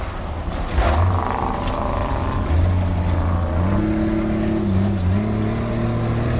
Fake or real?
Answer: real